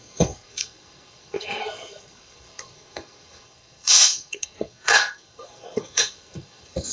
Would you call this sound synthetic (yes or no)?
yes